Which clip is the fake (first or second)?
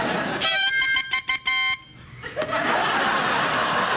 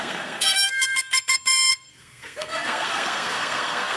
second